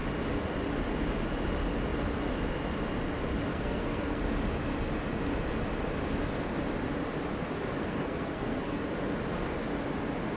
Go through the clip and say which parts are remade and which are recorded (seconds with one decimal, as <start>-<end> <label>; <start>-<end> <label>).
0.0-3.5 recorded; 3.5-4.2 remade; 4.2-7.8 recorded; 7.8-8.8 remade; 8.8-10.4 recorded